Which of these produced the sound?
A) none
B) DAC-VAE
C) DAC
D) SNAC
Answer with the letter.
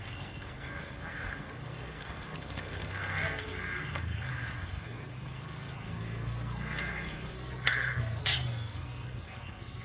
D